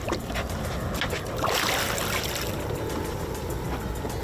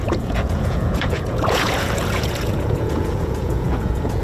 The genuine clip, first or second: first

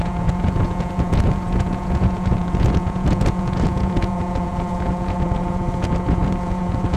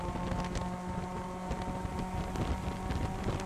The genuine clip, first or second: second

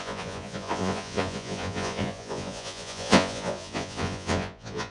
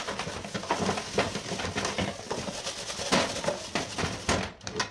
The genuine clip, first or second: second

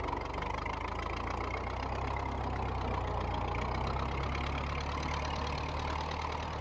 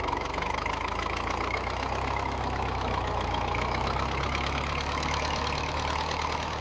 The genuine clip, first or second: first